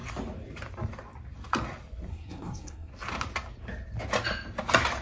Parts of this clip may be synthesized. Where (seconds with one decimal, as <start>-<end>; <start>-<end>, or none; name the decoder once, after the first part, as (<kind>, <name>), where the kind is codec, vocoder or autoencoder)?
2.1-2.9 (codec, SNAC)